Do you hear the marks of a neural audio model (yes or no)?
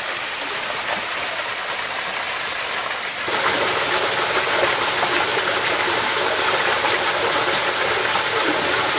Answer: no